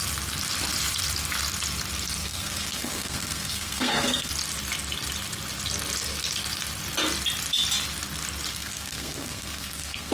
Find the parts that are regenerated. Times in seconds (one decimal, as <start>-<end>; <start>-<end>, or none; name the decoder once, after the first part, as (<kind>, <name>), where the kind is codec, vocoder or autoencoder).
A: 2.2-4.3 (codec, SNAC); 8.5-10.1

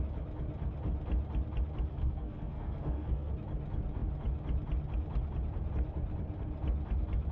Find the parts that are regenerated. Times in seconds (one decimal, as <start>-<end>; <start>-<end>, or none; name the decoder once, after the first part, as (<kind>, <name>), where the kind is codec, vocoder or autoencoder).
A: 1.9-3.3 (codec, SNAC)

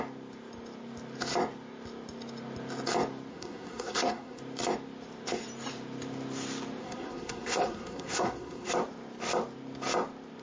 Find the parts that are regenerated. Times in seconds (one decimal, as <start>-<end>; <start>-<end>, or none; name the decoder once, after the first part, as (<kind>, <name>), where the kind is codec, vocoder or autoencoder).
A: 3.3-4.4 (codec, SNAC); 6.8-8.7

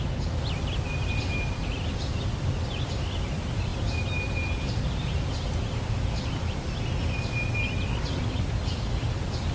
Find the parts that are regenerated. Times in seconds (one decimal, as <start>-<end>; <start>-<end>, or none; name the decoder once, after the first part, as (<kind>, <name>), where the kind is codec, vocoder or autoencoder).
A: none

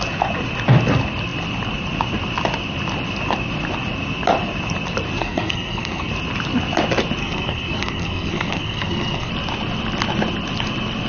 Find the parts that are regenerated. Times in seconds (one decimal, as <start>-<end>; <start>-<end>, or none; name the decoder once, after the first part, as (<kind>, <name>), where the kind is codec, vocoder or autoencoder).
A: 5.2-6.1 (codec, SNAC); 7.2-9.3